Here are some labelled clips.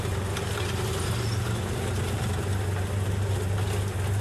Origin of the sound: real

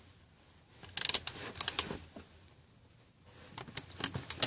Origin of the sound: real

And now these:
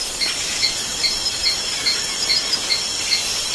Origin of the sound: real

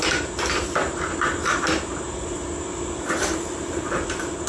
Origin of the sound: real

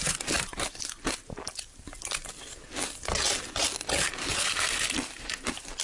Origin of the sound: real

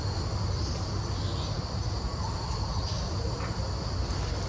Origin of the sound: real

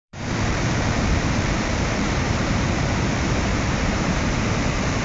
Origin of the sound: fake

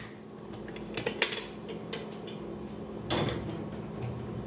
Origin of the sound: real